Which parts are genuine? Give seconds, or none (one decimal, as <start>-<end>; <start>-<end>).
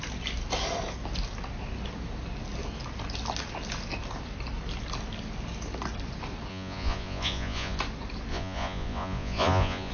0.0-6.5; 7.8-8.3